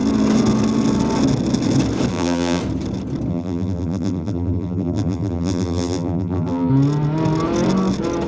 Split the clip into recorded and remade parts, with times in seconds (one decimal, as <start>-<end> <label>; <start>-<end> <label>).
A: 0.0-2.1 recorded; 2.1-2.6 remade; 2.6-3.3 recorded; 3.3-6.7 remade; 6.7-8.3 recorded